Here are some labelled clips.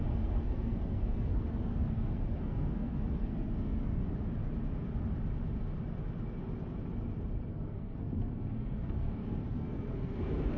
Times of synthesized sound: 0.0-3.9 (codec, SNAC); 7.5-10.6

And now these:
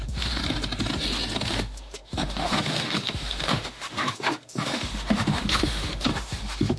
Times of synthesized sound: 0.0-0.4 (autoencoder, DAC-VAE); 1.4-6.8

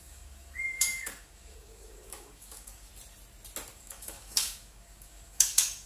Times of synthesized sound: 0.0-2.9 (codec, DAC); 3.7-5.9

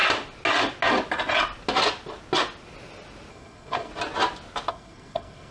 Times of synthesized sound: 3.3-3.9 (codec, SNAC); 4.7-5.5

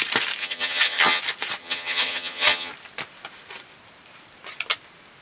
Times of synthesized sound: 0.4-1.2 (vocoder, HiFi-GAN); 1.6-2.7

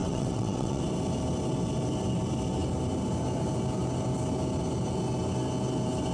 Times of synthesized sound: 0.0-0.8 (vocoder, WaveNeXt)